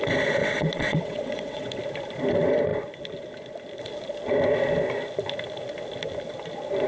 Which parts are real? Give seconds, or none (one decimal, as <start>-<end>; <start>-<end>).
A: 0.0-0.4; 1.8-6.9